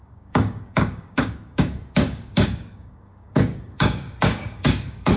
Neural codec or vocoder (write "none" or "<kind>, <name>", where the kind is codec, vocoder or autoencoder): codec, DAC